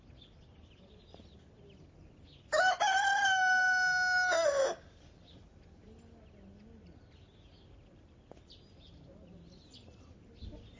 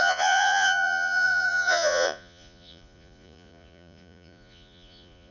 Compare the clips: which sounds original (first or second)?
first